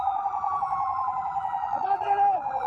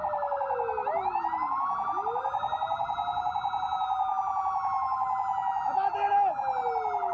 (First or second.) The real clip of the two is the second